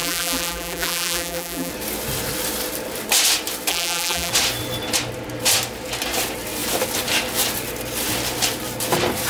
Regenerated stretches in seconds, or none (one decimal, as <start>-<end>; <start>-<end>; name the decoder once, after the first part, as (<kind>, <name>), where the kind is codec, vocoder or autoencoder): 0.0-1.7 (vocoder, BigVGAN v2); 3.7-4.3